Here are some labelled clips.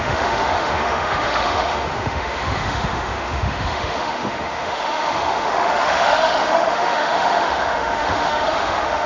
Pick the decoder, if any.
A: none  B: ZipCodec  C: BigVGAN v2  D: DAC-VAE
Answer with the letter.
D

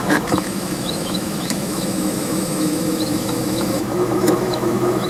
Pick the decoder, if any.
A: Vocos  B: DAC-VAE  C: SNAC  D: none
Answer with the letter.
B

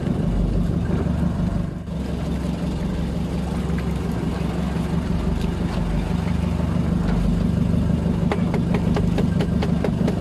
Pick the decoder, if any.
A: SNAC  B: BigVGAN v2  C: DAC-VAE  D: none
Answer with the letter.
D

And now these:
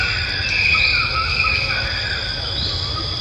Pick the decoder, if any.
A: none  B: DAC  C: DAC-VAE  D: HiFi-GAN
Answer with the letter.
A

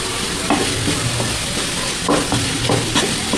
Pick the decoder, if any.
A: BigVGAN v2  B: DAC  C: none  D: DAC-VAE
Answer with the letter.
C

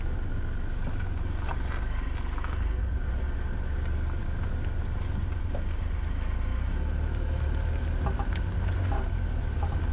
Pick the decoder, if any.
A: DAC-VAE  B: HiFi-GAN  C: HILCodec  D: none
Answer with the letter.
D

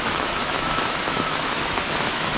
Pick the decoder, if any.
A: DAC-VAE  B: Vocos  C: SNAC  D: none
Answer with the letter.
A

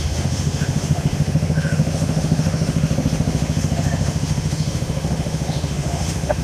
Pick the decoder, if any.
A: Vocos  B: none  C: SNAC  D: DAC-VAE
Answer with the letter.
D